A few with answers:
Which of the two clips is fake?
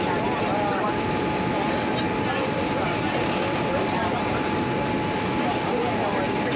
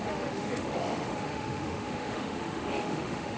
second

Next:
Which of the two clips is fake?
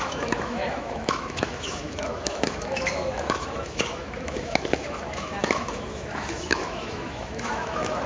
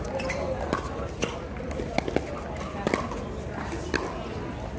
first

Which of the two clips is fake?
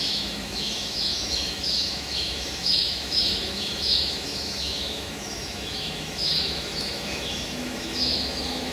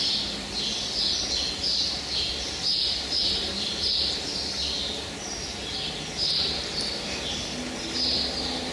first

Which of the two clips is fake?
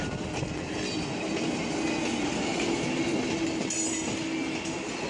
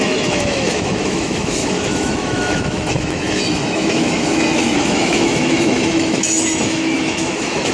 second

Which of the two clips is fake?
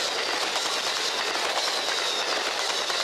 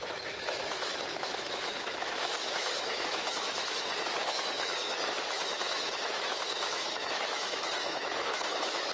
second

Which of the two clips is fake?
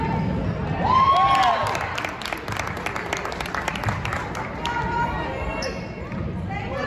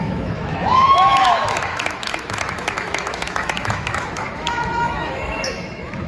second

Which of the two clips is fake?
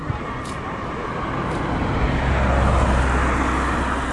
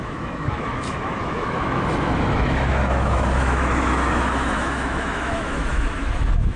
second